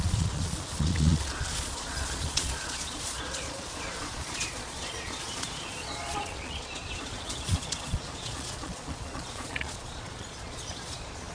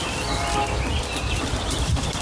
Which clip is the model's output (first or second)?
first